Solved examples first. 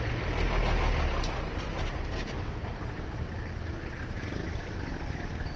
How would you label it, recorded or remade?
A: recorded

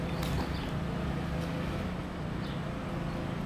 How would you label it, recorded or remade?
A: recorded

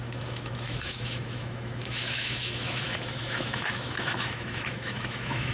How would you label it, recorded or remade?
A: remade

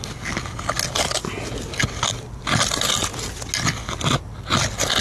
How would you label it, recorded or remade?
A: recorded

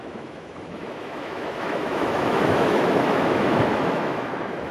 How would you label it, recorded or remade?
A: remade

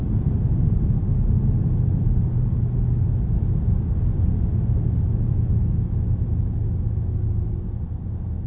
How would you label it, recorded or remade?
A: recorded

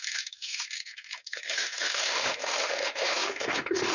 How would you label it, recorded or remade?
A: remade